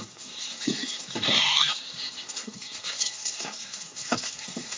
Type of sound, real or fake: fake